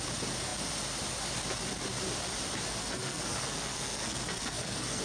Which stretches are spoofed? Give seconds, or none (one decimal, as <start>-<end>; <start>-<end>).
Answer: 2.8-5.0